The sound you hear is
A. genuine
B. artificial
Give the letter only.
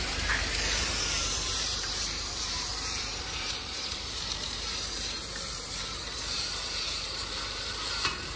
B